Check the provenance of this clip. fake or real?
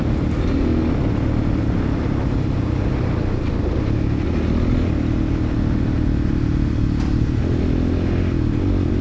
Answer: real